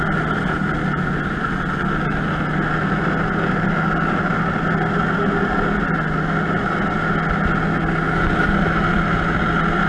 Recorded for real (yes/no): yes